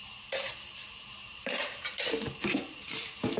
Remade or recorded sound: remade